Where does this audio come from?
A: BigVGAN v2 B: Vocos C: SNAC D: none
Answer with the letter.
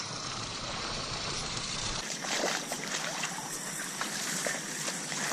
A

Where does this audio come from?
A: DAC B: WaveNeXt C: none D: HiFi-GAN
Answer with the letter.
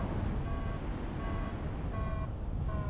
C